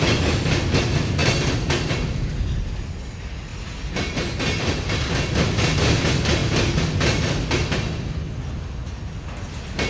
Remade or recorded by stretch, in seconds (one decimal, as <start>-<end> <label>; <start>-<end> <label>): 0.0-9.9 recorded